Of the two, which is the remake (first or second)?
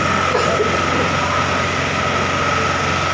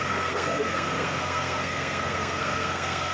second